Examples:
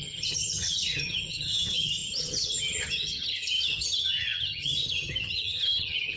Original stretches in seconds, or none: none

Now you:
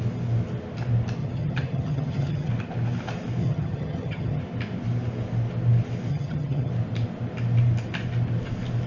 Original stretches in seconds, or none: 0.0-1.2; 2.5-3.4; 4.4-6.1; 6.7-8.9

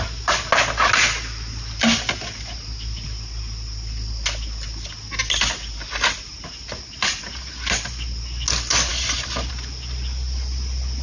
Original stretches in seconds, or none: 0.0-11.0

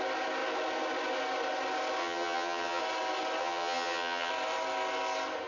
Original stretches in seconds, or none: 0.0-2.0; 2.8-3.4; 4.3-5.5